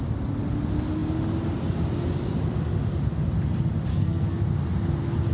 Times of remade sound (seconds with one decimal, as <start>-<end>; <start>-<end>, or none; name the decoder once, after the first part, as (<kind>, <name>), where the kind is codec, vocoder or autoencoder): 3.9-4.4 (codec, SNAC)